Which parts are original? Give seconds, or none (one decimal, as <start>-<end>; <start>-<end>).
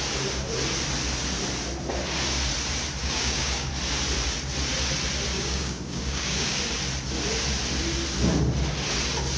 0.0-3.0; 3.7-5.3; 6.6-9.4